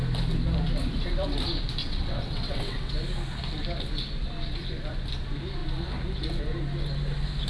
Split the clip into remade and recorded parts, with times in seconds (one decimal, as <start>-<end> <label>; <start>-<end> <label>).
0.0-1.8 recorded; 1.8-2.9 remade; 2.9-7.5 recorded